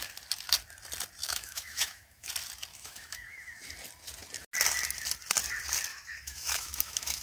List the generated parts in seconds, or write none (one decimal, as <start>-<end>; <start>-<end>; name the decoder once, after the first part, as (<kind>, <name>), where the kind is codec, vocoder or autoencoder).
1.2-2.3 (autoencoder, DAC-VAE); 2.7-3.6; 5.9-7.2